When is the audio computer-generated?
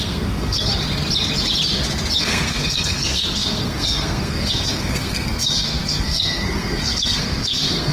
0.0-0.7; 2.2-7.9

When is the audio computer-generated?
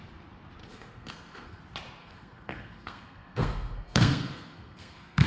0.6-1.6; 2.0-5.3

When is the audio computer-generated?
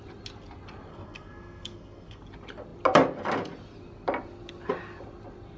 0.9-2.2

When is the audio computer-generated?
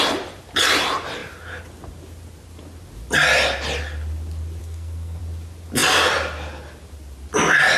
4.6-5.2